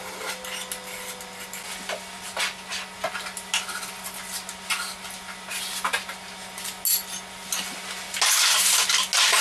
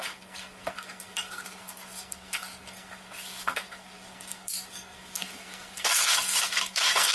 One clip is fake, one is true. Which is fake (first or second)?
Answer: second